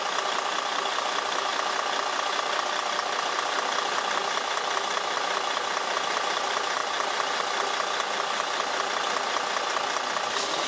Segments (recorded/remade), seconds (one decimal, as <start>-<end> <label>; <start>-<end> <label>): 0.0-10.7 recorded